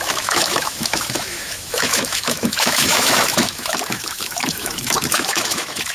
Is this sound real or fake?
fake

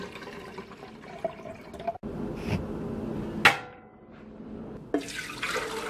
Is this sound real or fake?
real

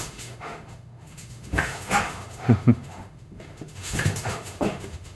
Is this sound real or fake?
fake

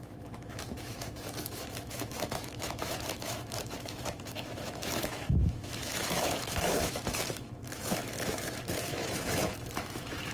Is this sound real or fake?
fake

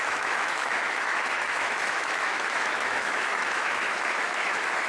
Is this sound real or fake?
fake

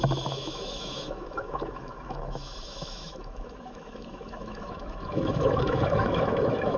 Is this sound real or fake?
fake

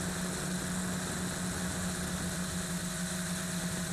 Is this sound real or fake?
real